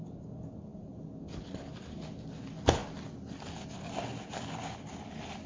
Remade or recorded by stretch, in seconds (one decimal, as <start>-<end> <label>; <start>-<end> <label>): 0.0-5.5 recorded